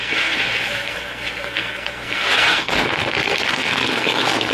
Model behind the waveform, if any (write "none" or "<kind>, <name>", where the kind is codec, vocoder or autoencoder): codec, SNAC